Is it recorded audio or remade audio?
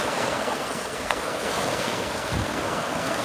remade